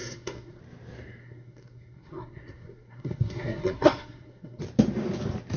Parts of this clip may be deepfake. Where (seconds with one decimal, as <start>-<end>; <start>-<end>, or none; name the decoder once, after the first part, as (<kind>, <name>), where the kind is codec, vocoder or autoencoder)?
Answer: 0.0-0.6 (codec, SNAC); 1.2-4.6